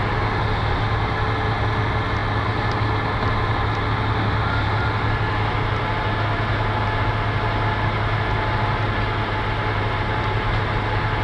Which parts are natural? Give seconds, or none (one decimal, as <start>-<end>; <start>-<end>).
0.0-11.2